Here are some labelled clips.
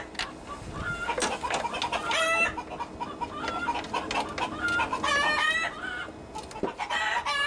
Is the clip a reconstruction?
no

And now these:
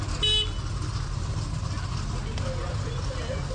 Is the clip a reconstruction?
no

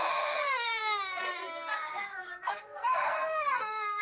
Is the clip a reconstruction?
yes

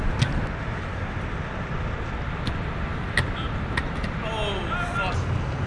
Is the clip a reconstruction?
no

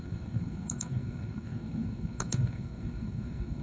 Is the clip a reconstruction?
yes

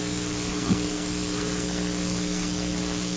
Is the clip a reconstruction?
yes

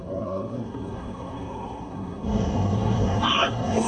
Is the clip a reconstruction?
yes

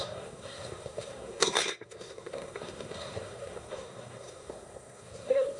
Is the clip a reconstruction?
yes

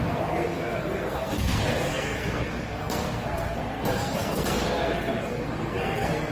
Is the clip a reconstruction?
yes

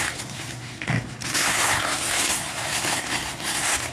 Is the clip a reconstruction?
yes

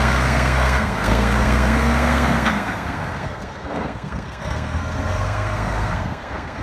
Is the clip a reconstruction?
yes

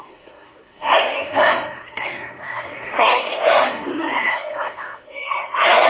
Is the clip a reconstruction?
yes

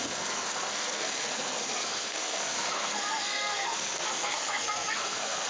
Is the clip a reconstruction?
yes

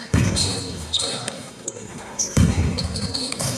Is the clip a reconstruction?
yes